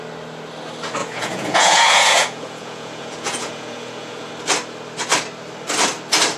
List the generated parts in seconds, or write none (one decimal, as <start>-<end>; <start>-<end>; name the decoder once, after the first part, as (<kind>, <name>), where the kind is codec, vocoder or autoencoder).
1.0-4.3 (vocoder, Vocos)